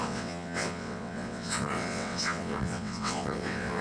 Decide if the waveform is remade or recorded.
remade